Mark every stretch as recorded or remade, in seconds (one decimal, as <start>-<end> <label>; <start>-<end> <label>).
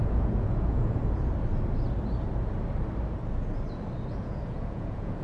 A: 0.0-1.0 remade; 1.0-4.1 recorded; 4.1-5.2 remade